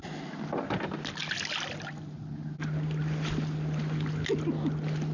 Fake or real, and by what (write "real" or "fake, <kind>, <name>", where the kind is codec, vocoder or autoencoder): real